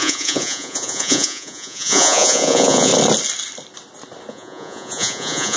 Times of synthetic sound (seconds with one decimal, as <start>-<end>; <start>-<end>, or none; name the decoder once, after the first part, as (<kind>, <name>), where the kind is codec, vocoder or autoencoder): 0.0-2.9 (vocoder, Vocos); 4.3-5.6